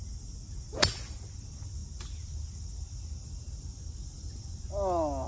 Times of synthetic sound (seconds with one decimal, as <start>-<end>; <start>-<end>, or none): 4.0-4.6